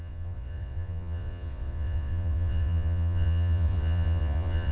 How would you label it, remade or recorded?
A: remade